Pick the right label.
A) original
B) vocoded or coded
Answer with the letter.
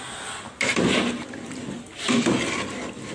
A